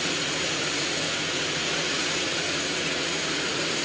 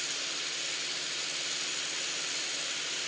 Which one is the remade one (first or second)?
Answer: first